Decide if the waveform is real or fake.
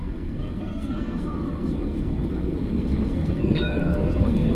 fake